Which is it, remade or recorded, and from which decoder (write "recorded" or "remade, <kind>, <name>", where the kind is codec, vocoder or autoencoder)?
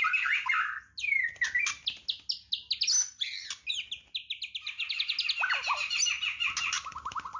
recorded